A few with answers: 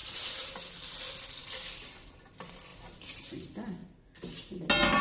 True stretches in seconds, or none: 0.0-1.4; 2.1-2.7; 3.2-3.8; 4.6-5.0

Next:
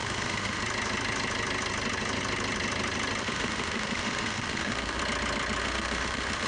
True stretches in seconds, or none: 0.6-3.2; 5.0-5.6

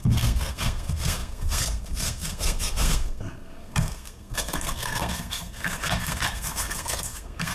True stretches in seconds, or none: none

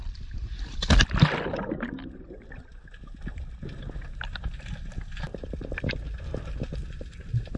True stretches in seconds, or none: 0.0-7.6

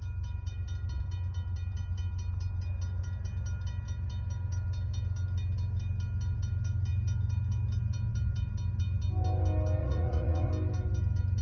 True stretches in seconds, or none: 0.0-9.8; 10.5-11.4

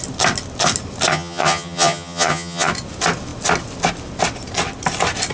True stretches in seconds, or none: 0.0-1.1; 2.7-5.3